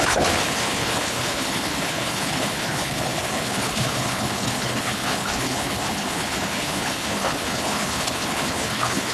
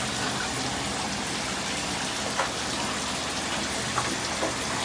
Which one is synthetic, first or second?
first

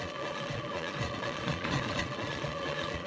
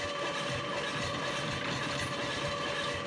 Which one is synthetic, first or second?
first